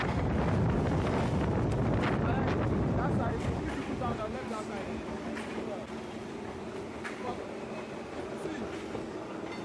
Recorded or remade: recorded